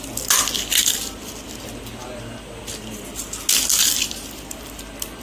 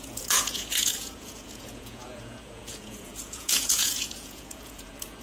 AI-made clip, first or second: second